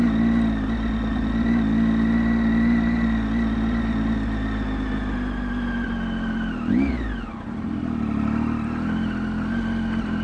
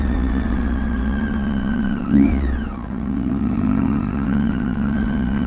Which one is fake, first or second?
second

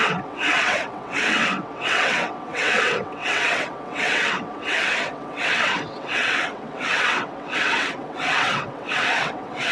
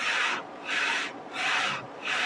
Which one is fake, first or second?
first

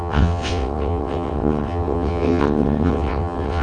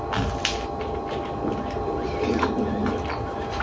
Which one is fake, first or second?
first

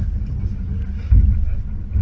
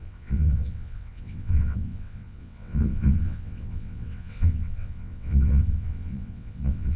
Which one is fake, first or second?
second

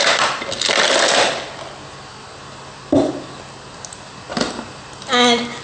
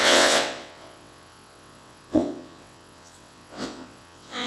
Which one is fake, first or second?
second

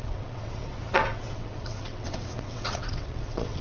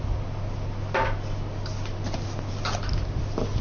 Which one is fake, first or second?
first